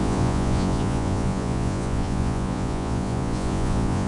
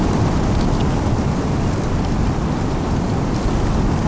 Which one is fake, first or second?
first